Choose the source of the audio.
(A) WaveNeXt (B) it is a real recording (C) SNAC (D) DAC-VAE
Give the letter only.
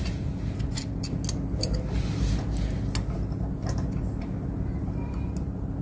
B